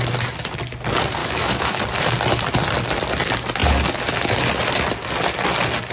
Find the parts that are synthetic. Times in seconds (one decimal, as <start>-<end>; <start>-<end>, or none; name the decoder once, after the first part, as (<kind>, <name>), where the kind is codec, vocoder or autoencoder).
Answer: 1.2-1.8 (autoencoder, DAC-VAE)

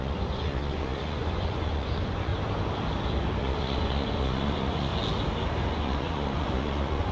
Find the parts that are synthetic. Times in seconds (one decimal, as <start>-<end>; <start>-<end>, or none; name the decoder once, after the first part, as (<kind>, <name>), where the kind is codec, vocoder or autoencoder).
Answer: 0.0-2.3 (vocoder, Vocos); 3.4-4.9; 5.7-7.1

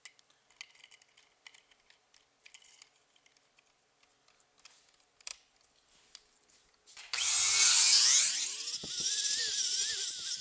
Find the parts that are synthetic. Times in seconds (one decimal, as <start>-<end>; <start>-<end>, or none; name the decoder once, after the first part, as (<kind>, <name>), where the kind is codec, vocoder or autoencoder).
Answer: none

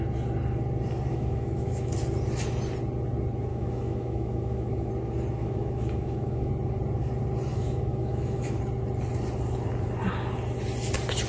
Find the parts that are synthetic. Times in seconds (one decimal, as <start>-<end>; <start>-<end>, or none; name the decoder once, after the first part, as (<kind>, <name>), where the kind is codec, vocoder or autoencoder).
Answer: 1.1-1.9 (autoencoder, DAC-VAE); 3.5-4.9; 5.4-6.5; 7.5-8.6